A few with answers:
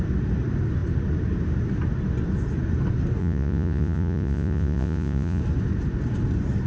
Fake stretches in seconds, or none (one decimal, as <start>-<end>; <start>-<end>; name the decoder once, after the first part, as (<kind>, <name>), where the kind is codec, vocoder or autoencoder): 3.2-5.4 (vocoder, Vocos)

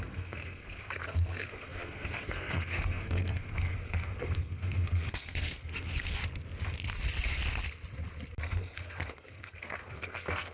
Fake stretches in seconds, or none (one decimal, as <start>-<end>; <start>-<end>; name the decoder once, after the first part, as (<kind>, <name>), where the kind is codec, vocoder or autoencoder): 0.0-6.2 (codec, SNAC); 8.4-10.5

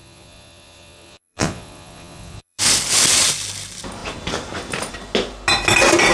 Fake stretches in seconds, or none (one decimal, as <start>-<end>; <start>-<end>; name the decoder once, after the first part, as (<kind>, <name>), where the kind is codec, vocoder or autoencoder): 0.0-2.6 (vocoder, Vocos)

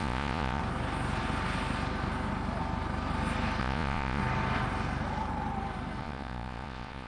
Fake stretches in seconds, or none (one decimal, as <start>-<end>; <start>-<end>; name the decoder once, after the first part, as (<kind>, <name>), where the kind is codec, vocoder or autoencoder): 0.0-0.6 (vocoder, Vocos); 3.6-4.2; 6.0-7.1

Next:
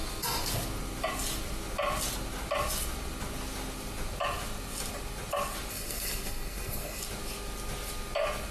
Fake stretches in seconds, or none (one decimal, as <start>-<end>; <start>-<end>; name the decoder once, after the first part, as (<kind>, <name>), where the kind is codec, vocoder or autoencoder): 5.7-7.0 (codec, SNAC)